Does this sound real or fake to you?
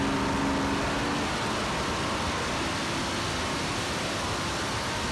real